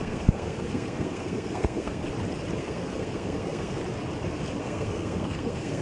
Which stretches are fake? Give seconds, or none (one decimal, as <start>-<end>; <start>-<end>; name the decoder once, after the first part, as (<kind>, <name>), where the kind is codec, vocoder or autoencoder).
0.0-2.0 (codec, SNAC); 2.6-3.8; 4.6-5.8